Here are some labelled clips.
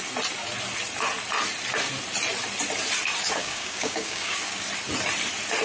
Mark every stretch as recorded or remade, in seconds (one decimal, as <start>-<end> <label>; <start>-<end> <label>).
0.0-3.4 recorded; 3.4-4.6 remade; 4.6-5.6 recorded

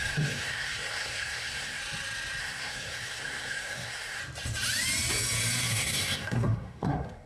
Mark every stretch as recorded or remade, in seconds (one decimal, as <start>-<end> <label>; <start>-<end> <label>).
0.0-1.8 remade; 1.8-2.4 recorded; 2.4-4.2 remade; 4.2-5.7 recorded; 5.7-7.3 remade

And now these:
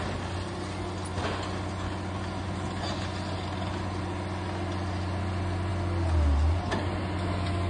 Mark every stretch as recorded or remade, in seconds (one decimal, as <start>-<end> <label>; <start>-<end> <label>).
0.0-7.7 recorded

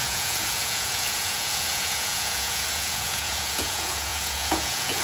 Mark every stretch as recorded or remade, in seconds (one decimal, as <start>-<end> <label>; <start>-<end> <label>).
0.0-5.0 remade